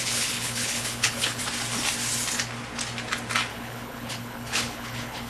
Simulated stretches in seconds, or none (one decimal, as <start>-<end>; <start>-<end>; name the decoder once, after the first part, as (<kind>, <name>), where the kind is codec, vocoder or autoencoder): 0.0-1.4 (codec, HILCodec); 3.5-5.3